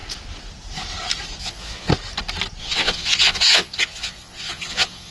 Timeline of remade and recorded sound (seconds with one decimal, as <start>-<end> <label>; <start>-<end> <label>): 0.0-1.4 recorded; 1.4-1.9 remade; 1.9-2.6 recorded; 2.6-5.1 remade